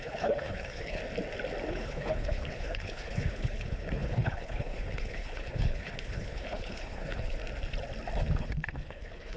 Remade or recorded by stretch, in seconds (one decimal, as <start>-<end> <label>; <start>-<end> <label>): 0.0-1.0 remade; 1.0-1.7 recorded; 1.7-7.4 remade; 7.4-8.4 recorded; 8.4-9.4 remade